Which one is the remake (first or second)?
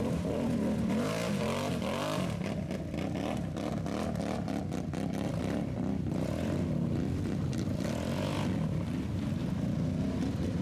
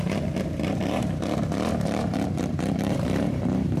second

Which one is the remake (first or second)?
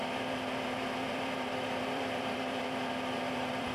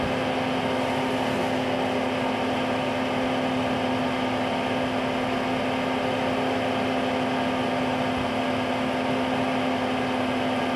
first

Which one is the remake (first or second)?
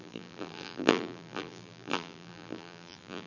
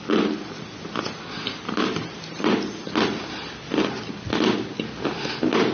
first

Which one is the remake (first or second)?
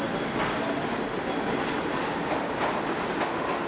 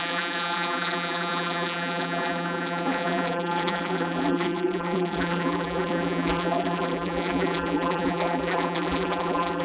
second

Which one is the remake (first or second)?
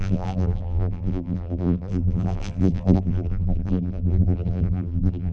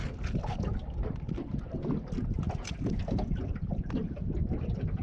first